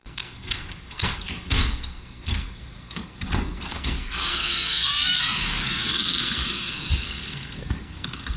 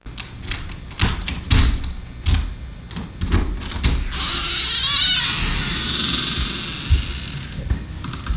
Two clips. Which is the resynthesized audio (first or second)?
first